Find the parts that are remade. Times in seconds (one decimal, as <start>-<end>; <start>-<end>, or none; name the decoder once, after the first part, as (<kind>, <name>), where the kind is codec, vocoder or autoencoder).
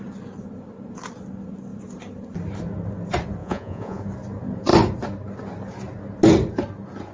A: 3.4-4.0 (vocoder, Vocos)